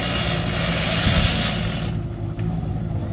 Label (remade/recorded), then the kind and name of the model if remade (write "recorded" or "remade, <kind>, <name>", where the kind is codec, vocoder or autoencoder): recorded